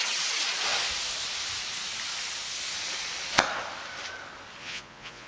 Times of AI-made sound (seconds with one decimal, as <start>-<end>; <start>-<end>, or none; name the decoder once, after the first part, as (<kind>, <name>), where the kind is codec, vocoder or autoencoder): 4.6-5.3 (vocoder, Vocos)